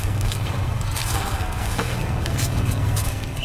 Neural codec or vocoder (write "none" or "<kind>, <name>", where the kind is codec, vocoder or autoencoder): codec, SNAC